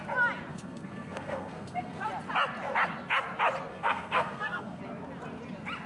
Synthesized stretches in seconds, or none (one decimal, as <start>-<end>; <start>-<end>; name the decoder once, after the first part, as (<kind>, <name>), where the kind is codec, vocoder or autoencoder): 0.5-2.0 (codec, SNAC); 3.7-4.8